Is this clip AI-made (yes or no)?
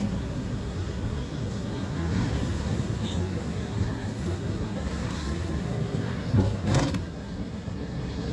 yes